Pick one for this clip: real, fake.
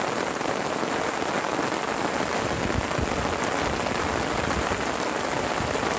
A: real